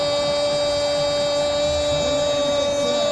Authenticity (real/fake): real